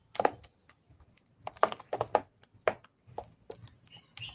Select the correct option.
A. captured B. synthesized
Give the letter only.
A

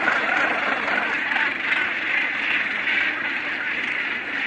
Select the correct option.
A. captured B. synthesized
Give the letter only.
A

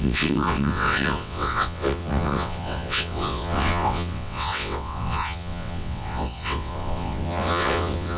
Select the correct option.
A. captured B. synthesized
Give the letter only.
B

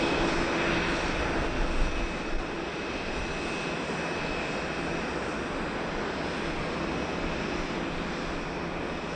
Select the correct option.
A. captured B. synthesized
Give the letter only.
A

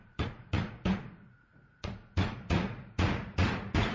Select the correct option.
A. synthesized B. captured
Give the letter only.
A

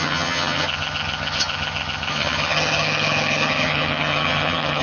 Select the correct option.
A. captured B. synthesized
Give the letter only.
B